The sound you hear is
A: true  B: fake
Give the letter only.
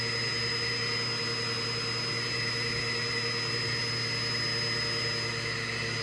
A